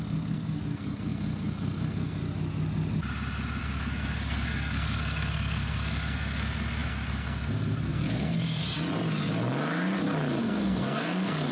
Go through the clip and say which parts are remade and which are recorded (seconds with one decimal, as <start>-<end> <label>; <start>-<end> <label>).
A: 0.0-2.2 remade; 2.2-3.6 recorded; 3.6-8.6 remade; 8.6-10.4 recorded; 10.4-11.5 remade